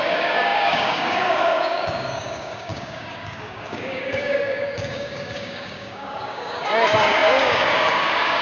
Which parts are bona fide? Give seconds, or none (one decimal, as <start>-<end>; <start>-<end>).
none